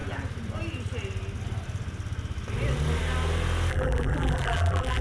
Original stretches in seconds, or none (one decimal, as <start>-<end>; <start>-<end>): 0.0-3.7